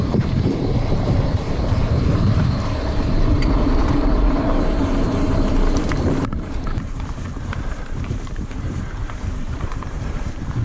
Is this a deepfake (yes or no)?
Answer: yes